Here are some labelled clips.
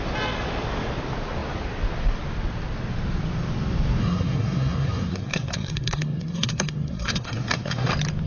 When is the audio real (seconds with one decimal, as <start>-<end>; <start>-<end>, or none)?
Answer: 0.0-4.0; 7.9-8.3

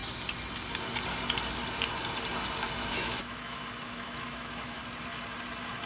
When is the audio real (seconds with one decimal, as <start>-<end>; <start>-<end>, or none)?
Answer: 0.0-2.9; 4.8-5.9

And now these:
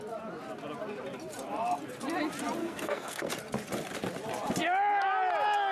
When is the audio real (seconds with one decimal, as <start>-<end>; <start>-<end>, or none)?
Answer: 0.0-2.6; 3.3-5.7